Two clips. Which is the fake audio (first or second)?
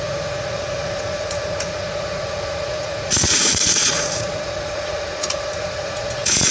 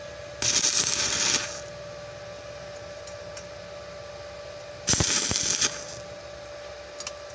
first